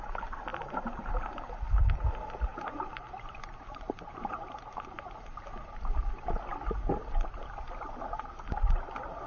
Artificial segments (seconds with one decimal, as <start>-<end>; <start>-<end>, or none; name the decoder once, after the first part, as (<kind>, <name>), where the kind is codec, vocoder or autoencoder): 0.5-1.1 (vocoder, BigVGAN v2); 2.5-5.1